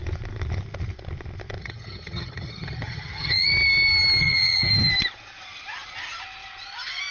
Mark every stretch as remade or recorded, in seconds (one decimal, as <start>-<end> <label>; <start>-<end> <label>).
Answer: 0.0-1.6 recorded; 1.6-3.5 remade; 3.5-4.2 recorded; 4.2-4.7 remade; 4.7-7.1 recorded